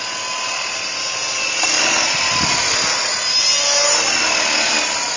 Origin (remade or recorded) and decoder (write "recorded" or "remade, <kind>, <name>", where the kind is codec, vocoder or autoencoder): recorded